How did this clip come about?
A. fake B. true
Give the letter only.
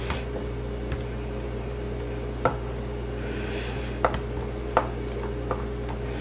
B